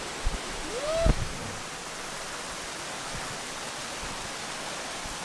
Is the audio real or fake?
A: real